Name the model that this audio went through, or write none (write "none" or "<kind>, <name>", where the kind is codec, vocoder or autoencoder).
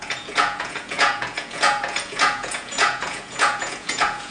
vocoder, Vocos